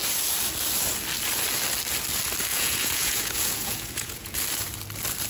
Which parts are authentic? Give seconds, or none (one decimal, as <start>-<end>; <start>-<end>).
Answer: 0.0-2.5; 4.4-5.3